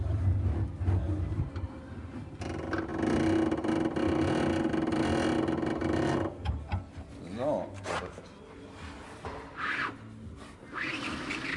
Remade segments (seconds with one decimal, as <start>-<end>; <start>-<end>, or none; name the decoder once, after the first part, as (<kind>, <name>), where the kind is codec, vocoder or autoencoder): none